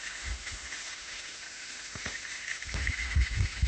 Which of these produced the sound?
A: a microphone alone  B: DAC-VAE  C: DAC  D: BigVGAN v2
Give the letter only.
B